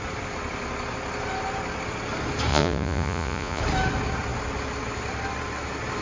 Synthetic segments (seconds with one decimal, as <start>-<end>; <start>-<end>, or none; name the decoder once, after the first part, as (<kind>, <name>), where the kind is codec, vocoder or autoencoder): 2.5-3.6 (vocoder, Vocos)